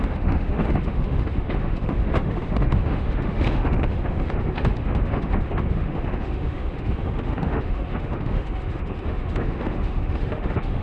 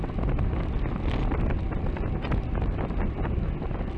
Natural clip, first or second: second